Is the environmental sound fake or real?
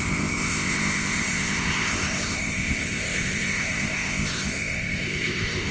fake